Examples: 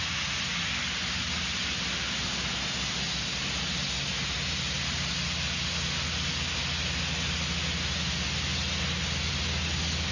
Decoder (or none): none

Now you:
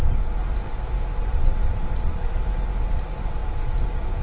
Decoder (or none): vocoder, BigVGAN v2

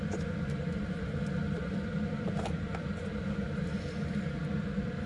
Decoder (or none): vocoder, BigVGAN v2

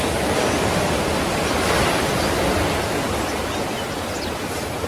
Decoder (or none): none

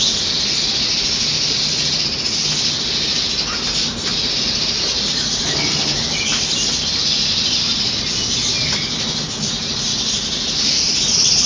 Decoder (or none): none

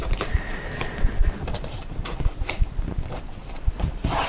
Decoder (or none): vocoder, BigVGAN v2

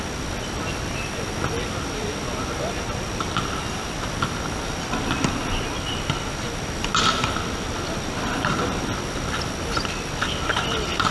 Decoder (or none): none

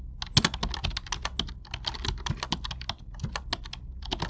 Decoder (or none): none